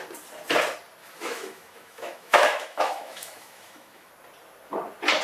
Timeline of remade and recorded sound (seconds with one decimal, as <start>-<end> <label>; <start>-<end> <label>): 0.0-1.0 recorded; 1.0-4.1 remade; 4.1-5.2 recorded